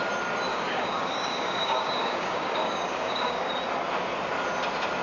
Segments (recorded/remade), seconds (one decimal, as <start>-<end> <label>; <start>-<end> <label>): 0.0-0.5 recorded; 0.5-3.5 remade; 3.5-5.0 recorded